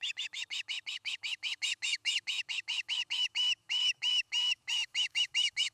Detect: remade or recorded remade